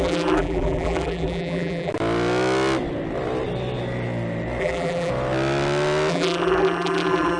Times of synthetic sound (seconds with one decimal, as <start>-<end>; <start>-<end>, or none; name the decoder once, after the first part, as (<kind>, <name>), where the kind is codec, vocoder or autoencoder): 0.0-1.9 (vocoder, BigVGAN v2); 4.6-5.1; 6.1-7.4